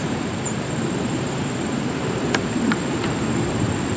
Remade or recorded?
remade